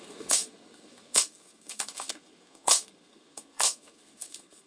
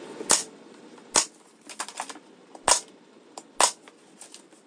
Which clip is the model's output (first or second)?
first